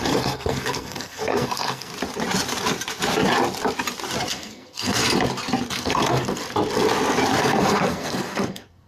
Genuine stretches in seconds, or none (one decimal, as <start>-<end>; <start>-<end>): 1.9-4.3; 5.0-5.7; 6.4-7.4